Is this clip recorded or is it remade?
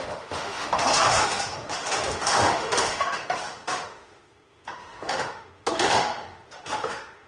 remade